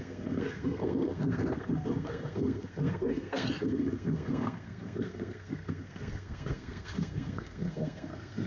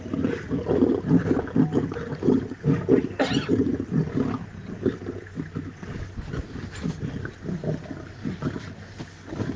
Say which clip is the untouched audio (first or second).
second